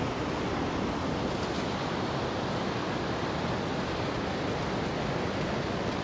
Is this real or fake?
real